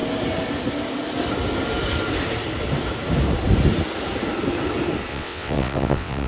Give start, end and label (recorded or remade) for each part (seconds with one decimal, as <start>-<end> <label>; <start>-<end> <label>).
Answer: 0.0-5.1 recorded; 5.1-6.3 remade